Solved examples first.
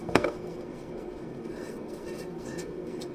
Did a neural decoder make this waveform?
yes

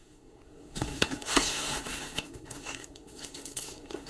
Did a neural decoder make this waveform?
yes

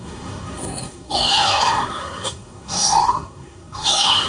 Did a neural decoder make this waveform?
yes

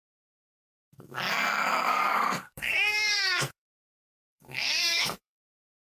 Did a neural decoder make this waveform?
yes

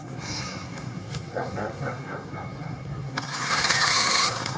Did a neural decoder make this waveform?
yes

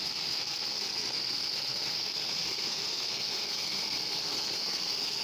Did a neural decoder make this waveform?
yes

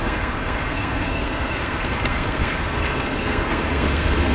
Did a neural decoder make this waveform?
yes